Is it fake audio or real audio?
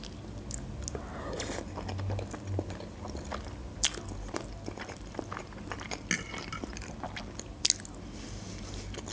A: real